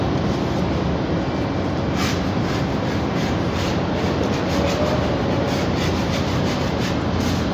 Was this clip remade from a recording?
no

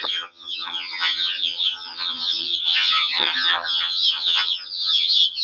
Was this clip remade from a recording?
yes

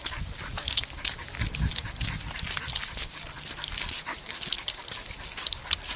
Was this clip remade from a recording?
no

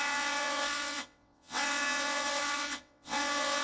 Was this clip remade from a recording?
yes